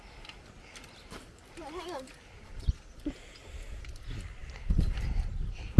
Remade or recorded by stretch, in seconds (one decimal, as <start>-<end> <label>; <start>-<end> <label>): 0.0-1.0 recorded; 1.0-2.9 remade; 2.9-3.4 recorded; 3.4-4.0 remade; 4.0-4.4 recorded; 4.4-5.3 remade; 5.3-5.8 recorded